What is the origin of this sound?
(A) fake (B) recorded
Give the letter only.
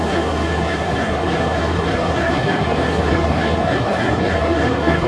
A